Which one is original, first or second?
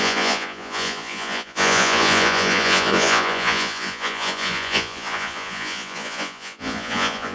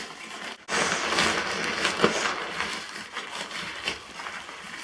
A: second